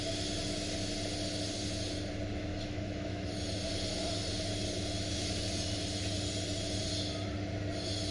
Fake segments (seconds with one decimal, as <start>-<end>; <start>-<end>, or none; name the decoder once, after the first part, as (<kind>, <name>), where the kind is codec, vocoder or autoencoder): 2.5-3.3 (autoencoder, DAC-VAE)